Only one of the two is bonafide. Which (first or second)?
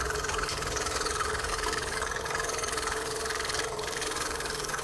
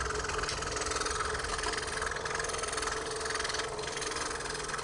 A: second